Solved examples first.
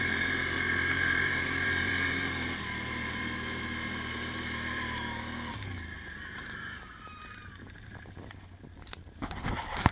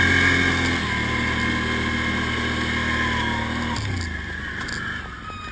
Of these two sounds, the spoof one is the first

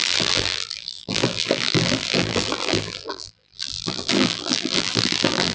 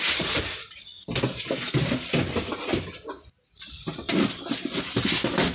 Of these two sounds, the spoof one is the first